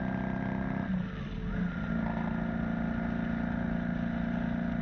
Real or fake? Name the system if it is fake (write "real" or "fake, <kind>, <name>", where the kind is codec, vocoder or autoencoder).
real